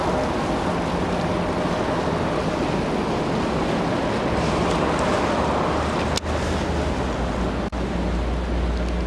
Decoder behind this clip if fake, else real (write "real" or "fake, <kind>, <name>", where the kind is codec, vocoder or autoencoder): real